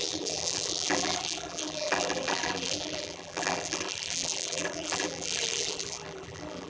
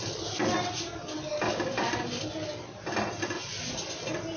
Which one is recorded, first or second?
second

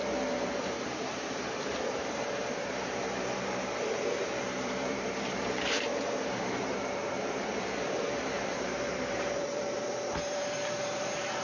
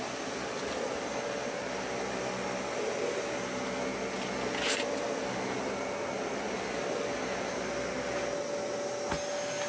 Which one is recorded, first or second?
second